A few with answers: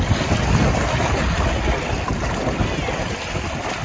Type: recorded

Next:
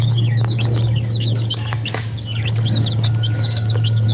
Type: remade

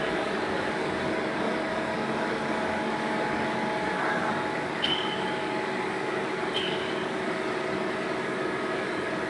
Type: remade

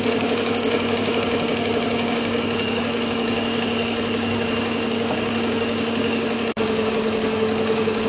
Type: remade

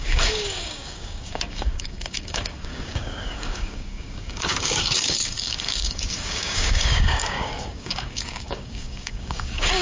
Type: remade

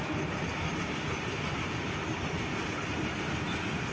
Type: recorded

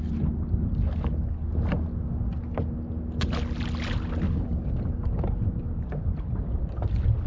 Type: recorded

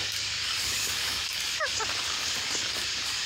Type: remade